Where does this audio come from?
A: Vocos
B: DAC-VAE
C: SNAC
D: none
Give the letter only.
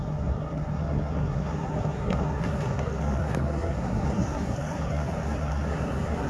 C